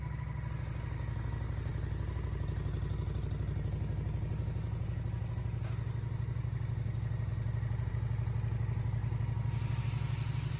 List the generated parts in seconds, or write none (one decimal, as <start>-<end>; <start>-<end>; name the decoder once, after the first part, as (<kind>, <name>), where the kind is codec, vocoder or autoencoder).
none